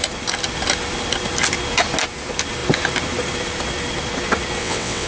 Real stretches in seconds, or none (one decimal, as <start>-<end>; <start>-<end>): 0.0-4.6